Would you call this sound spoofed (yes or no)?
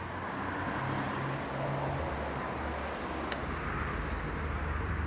no